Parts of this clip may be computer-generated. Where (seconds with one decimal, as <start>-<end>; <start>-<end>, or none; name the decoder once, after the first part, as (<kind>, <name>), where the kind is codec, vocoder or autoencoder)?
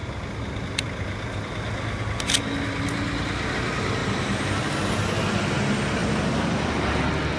4.0-4.5 (vocoder, BigVGAN v2); 6.0-7.0